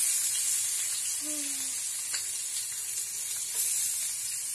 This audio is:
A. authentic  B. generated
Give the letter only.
A